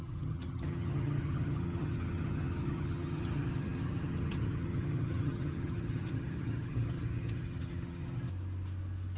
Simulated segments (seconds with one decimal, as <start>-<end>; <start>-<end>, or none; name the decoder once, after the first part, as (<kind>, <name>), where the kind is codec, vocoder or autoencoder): 0.0-8.3 (vocoder, HiFi-GAN)